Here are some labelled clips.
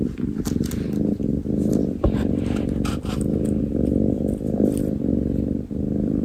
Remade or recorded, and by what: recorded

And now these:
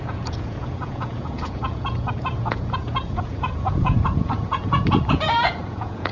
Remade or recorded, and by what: remade, vocoder, Vocos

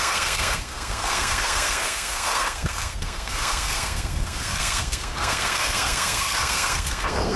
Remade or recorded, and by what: remade, codec, SNAC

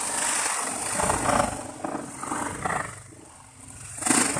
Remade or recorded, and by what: recorded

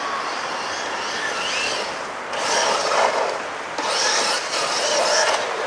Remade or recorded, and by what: recorded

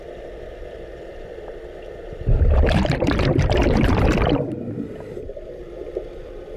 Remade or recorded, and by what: remade, vocoder, BigVGAN v2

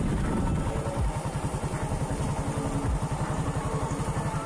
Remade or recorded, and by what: recorded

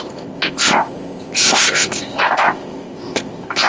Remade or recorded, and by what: remade, codec, ZipCodec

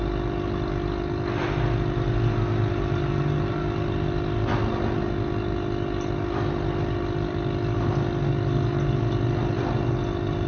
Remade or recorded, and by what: recorded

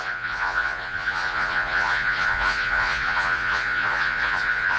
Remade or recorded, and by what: remade, vocoder, Vocos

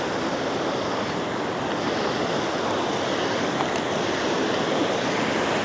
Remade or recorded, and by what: recorded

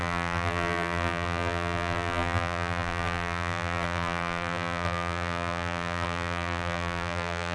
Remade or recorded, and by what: remade, vocoder, BigVGAN v2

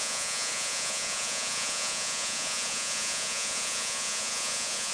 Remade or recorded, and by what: remade, vocoder, Vocos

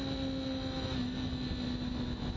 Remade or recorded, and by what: recorded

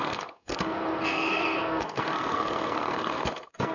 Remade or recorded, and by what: remade, codec, SNAC